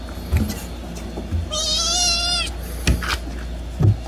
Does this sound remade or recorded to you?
recorded